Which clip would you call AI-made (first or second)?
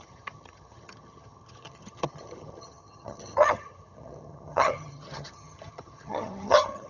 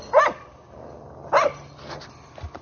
first